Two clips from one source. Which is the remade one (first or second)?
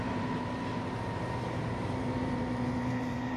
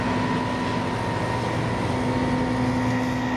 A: first